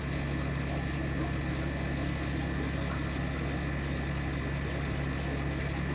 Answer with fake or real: real